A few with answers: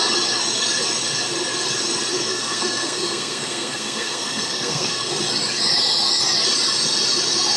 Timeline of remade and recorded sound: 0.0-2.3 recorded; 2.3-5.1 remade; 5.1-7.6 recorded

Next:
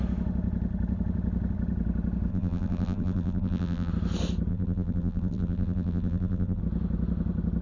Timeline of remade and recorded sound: 0.0-2.3 recorded; 2.3-3.9 remade; 3.9-4.5 recorded; 4.5-6.6 remade; 6.6-7.6 recorded